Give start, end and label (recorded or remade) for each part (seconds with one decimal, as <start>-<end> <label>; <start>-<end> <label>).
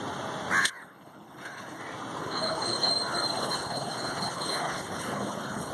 0.0-0.6 recorded; 0.6-1.8 remade; 1.8-2.2 recorded; 2.2-2.9 remade; 2.9-3.4 recorded; 3.4-5.7 remade